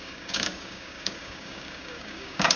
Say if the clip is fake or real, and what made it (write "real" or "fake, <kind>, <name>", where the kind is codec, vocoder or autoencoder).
fake, codec, DAC